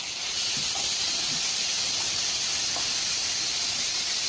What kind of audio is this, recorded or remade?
recorded